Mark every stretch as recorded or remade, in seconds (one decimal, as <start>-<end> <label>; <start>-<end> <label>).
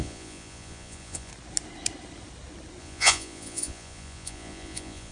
0.0-1.3 remade; 1.3-2.8 recorded; 2.8-5.1 remade